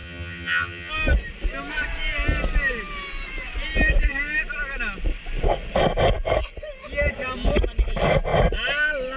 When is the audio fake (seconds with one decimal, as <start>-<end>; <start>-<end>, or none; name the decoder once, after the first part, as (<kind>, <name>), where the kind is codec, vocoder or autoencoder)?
0.0-0.9 (vocoder, HiFi-GAN)